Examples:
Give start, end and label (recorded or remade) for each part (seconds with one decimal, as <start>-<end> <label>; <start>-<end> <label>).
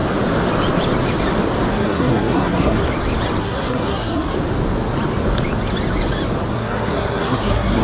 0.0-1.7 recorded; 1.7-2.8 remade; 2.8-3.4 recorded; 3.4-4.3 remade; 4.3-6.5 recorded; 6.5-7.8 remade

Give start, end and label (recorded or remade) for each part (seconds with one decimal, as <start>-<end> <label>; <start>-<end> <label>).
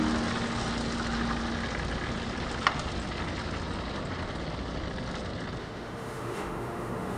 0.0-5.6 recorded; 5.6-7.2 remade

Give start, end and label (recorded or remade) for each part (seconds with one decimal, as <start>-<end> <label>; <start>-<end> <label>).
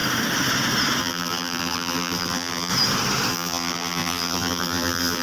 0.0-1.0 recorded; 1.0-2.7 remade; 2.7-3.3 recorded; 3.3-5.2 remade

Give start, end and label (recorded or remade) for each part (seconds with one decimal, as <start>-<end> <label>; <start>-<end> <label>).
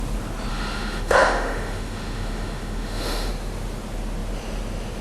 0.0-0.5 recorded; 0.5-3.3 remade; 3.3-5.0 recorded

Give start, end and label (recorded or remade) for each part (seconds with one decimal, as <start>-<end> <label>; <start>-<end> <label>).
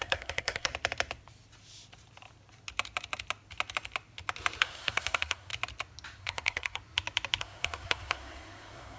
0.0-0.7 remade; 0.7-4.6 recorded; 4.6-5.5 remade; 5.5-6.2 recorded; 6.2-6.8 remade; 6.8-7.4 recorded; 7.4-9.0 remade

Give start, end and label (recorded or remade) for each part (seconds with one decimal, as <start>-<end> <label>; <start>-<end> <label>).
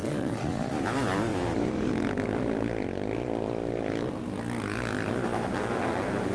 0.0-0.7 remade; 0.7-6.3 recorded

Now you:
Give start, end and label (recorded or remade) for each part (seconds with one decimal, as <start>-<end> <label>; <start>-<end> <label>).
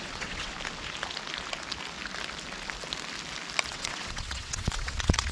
0.0-0.5 remade; 0.5-3.7 recorded; 3.7-5.3 remade